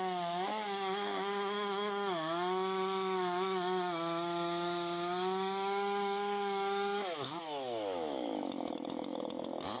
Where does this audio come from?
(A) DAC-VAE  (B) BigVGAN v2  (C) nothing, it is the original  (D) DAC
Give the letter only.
A